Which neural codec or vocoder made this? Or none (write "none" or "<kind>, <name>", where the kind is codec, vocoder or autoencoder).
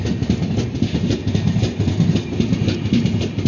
none